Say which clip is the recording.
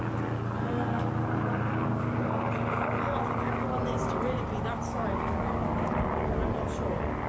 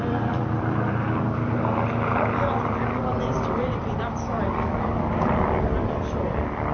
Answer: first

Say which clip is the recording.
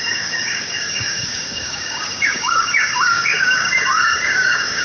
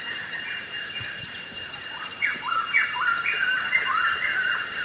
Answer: second